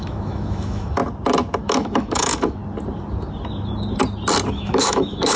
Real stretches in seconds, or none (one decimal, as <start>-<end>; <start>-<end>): 1.0-1.6; 2.6-4.5